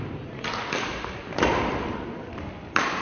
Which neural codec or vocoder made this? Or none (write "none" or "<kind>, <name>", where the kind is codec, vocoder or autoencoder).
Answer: none